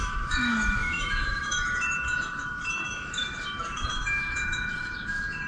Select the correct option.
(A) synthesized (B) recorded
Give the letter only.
A